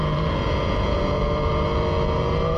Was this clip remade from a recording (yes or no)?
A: yes